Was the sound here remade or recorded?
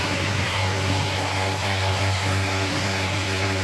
remade